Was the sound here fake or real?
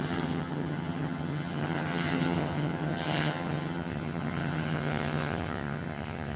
fake